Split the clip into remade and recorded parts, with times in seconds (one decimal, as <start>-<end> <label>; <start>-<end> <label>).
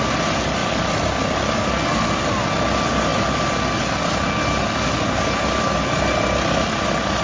0.0-7.2 recorded